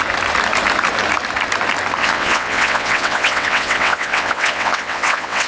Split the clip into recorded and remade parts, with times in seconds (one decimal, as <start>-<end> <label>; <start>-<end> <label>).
0.0-2.0 recorded; 2.0-5.5 remade